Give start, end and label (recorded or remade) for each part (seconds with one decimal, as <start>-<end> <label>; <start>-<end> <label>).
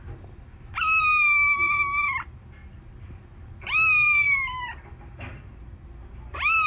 0.0-6.7 recorded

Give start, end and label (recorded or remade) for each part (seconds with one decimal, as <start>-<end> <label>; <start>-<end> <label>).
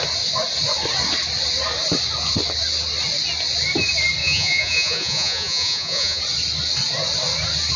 0.0-4.2 recorded; 4.2-6.2 remade; 6.2-7.8 recorded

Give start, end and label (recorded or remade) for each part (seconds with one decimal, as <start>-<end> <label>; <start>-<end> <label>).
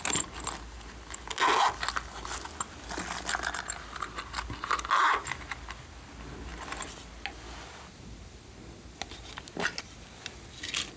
0.0-11.0 recorded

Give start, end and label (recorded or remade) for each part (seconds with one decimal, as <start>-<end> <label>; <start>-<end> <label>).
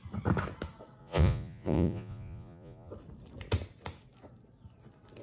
0.0-1.0 recorded; 1.0-2.9 remade; 2.9-5.2 recorded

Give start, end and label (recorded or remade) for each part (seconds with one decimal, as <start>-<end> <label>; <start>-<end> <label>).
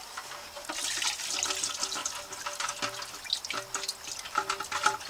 0.0-5.1 recorded